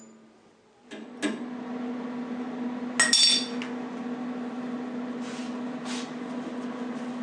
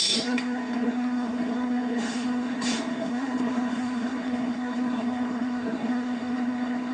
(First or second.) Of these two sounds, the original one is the first